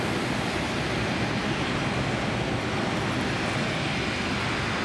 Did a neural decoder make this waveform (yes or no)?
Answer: no